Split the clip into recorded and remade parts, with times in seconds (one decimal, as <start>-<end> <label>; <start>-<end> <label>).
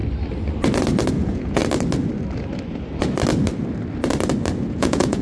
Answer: 0.0-1.1 recorded; 1.1-1.6 remade; 1.6-4.7 recorded; 4.7-5.2 remade